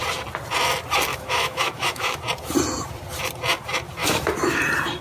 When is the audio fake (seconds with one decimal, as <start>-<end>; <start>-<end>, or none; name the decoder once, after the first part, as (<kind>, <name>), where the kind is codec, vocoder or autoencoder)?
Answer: 1.1-2.2 (autoencoder, DAC-VAE); 4.0-4.6